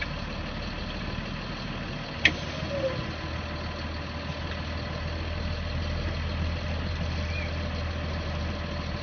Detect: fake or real real